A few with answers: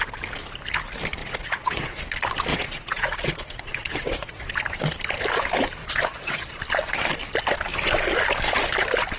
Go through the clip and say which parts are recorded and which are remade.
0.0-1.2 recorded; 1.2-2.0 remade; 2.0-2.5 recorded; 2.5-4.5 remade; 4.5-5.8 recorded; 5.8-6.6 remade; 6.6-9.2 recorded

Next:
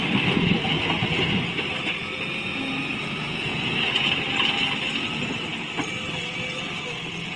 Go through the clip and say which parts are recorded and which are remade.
0.0-2.5 recorded; 2.5-3.7 remade; 3.7-7.4 recorded